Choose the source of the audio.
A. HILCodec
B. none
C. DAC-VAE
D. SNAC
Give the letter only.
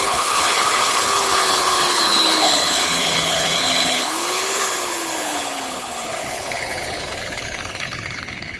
A